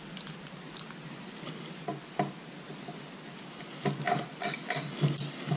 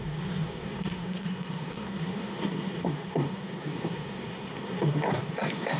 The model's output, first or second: second